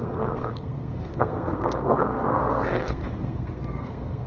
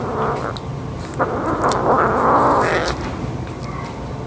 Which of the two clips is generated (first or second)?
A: first